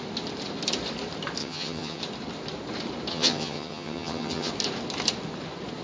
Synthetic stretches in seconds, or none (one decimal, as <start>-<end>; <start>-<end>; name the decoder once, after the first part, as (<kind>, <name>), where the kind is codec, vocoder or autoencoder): 1.4-2.0 (vocoder, HiFi-GAN); 3.1-4.5